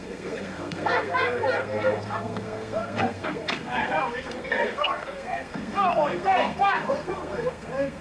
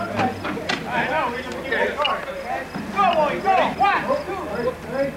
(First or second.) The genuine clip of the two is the second